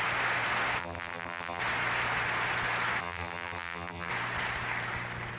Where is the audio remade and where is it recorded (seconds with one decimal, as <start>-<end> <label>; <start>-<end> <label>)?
0.0-0.8 recorded; 0.8-1.6 remade; 1.6-3.0 recorded; 3.0-4.1 remade; 4.1-5.4 recorded